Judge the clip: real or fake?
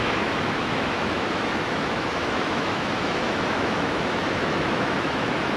fake